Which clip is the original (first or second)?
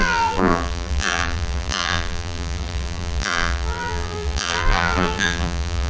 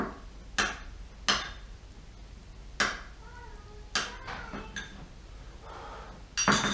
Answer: second